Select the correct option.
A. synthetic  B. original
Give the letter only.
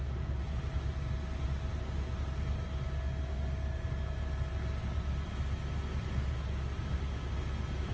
B